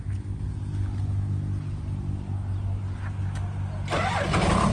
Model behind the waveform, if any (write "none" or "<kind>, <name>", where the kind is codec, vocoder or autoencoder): none